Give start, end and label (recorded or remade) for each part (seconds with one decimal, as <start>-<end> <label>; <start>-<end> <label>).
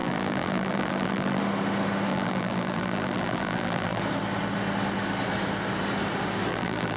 0.0-1.4 remade; 1.4-2.1 recorded; 2.1-4.0 remade; 4.0-6.5 recorded; 6.5-7.0 remade